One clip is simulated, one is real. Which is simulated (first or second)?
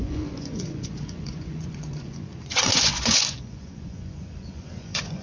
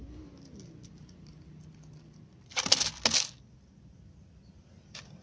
first